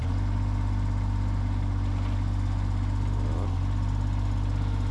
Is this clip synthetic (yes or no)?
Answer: no